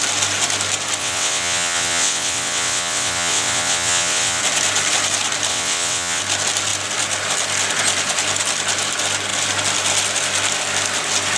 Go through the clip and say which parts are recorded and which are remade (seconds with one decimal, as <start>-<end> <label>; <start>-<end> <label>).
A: 0.0-1.0 recorded; 1.0-4.4 remade; 4.4-5.5 recorded; 5.5-6.2 remade; 6.2-11.4 recorded